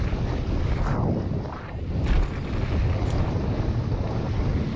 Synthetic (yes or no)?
no